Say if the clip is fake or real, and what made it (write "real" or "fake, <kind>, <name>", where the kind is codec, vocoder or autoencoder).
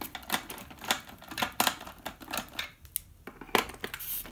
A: real